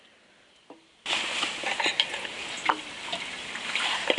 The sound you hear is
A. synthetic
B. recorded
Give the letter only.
B